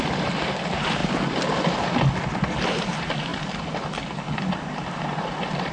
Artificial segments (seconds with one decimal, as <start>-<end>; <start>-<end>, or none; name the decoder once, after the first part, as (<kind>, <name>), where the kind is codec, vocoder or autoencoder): none